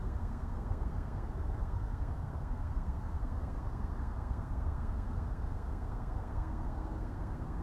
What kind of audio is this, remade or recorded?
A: remade